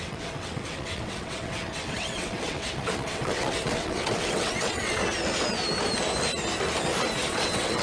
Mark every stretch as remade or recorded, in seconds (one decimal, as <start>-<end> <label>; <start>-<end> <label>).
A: 0.0-5.0 remade; 5.0-7.3 recorded; 7.3-7.8 remade

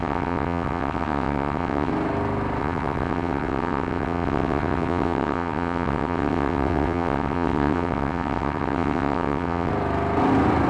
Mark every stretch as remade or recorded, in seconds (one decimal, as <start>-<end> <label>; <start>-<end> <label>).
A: 0.0-1.9 remade; 1.9-2.6 recorded; 2.6-9.7 remade; 9.7-10.7 recorded

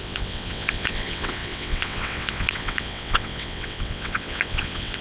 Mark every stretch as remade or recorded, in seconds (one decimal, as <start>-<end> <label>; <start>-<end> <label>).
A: 0.0-5.0 remade

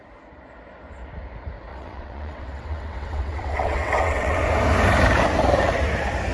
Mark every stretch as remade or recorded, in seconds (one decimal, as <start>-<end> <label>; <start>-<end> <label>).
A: 0.0-1.7 recorded; 1.7-4.4 remade; 4.4-6.3 recorded

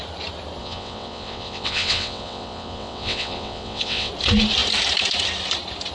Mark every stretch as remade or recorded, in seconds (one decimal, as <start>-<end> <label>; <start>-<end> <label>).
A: 0.0-0.6 recorded; 0.6-4.1 remade; 4.1-5.9 recorded

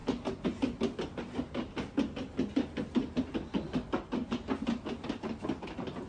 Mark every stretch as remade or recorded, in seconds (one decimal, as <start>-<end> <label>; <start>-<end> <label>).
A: 0.0-6.1 recorded

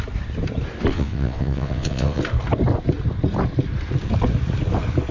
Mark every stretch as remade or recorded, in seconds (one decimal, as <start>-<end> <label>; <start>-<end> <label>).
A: 0.0-0.9 recorded; 0.9-2.2 remade; 2.2-5.1 recorded

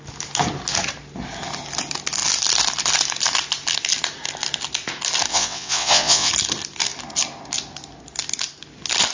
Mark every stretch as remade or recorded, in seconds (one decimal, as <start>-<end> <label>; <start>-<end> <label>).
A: 0.0-5.3 recorded; 5.3-6.3 remade; 6.3-9.1 recorded